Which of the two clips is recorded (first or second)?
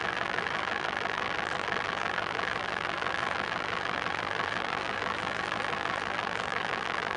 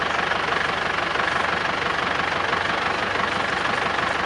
second